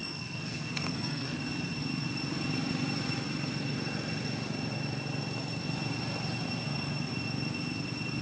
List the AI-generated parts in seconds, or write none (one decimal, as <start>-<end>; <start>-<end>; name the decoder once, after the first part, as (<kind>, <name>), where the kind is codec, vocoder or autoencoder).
0.0-1.4 (codec, SNAC)